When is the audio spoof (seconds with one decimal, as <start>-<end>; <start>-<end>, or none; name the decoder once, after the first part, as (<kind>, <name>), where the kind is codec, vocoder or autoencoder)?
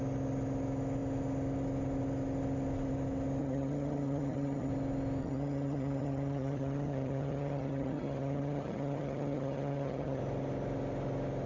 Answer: 3.4-4.7 (vocoder, HiFi-GAN); 5.2-10.2